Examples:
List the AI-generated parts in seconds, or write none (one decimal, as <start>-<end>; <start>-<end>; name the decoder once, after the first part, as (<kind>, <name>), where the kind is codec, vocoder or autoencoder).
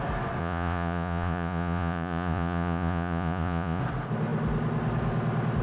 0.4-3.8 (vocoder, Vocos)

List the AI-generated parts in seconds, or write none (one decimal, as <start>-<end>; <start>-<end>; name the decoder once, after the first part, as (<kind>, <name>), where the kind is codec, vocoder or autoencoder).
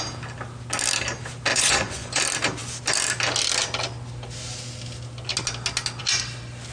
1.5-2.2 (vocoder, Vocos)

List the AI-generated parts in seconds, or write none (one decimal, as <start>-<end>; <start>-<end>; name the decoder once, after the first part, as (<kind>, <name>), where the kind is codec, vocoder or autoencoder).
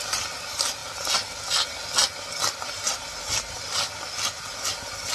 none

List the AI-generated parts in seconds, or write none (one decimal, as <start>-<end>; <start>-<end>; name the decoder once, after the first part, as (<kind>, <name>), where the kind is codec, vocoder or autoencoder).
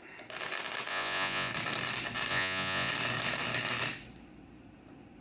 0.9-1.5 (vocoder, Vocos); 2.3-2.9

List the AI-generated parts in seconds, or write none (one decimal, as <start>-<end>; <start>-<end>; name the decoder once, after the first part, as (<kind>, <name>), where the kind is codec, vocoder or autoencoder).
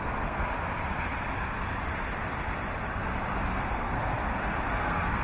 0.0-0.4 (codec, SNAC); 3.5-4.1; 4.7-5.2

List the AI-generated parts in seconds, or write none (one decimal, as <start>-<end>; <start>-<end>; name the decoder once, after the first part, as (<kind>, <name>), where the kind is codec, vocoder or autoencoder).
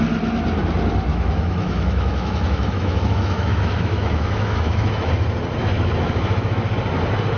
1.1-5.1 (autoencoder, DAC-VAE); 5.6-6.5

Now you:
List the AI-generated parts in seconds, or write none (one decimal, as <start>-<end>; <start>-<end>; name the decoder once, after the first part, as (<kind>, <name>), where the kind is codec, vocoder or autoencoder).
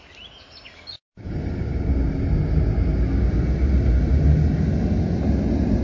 none